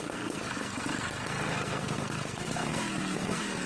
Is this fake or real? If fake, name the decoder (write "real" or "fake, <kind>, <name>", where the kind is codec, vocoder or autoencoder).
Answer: fake, codec, SNAC